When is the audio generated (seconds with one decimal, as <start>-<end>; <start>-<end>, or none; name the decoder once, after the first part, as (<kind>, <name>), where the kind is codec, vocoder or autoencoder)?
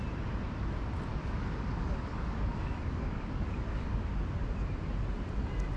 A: 1.1-4.0 (codec, DAC)